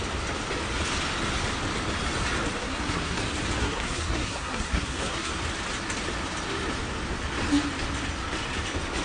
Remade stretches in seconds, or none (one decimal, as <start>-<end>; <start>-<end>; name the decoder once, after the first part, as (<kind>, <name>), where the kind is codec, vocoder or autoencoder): 2.6-3.2 (codec, SNAC); 3.6-5.3